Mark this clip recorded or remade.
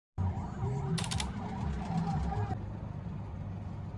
recorded